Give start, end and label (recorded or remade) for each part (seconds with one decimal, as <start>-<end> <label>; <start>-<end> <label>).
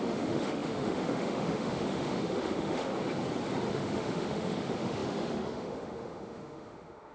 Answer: 0.0-2.9 remade; 2.9-3.7 recorded; 3.7-7.1 remade